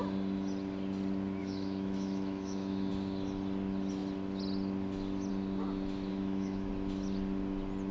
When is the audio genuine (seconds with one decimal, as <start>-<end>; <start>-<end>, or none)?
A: 0.0-1.4; 2.9-6.1; 6.7-7.9